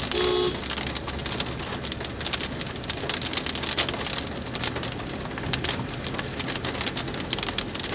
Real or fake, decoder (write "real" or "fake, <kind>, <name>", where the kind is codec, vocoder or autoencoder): real